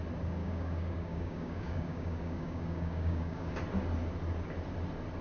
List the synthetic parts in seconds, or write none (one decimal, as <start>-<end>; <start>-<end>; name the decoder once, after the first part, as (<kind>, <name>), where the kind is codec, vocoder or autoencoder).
0.4-3.5 (codec, DAC)

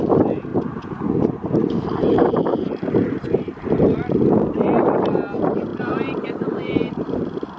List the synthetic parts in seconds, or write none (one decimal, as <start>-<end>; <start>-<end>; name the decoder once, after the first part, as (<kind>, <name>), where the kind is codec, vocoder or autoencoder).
0.5-3.7 (vocoder, BigVGAN v2); 5.7-7.6

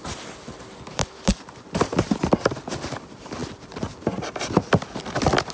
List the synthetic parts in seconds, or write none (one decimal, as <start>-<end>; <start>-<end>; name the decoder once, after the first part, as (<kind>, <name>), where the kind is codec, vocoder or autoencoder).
0.0-3.4 (vocoder, BigVGAN v2); 3.9-5.5

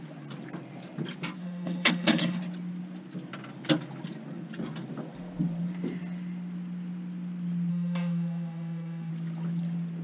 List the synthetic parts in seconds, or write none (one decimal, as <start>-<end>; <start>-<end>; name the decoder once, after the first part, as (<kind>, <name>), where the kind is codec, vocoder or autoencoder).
1.4-2.4 (autoencoder, DAC-VAE); 7.7-9.1

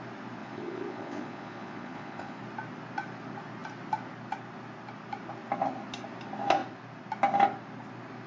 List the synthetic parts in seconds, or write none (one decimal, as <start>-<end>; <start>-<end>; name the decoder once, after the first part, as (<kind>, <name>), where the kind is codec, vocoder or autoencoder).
0.4-2.4 (vocoder, Vocos)